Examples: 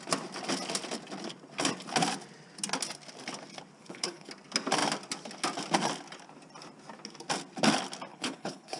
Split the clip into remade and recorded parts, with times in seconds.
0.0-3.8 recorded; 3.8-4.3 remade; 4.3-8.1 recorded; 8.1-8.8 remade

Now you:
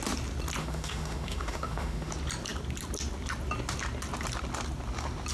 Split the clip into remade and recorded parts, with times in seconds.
0.0-0.6 recorded; 0.6-2.1 remade; 2.1-5.3 recorded

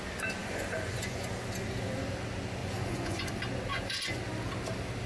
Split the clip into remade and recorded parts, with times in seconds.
0.0-0.4 recorded; 0.4-1.3 remade; 1.3-2.6 recorded; 2.6-3.3 remade; 3.3-3.7 recorded; 3.7-4.2 remade; 4.2-5.1 recorded

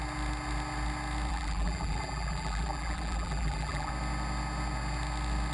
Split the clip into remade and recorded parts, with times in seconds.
0.0-1.3 recorded; 1.3-3.9 remade; 3.9-5.5 recorded

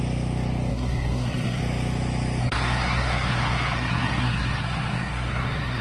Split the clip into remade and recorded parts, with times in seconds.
0.0-0.7 recorded; 0.7-1.6 remade; 1.6-2.4 recorded; 2.4-5.8 remade